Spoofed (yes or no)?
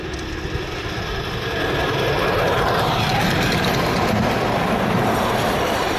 no